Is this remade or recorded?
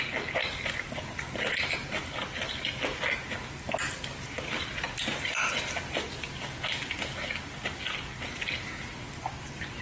recorded